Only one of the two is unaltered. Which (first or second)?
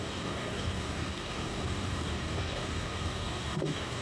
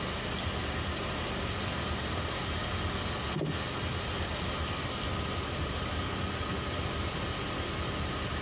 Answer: second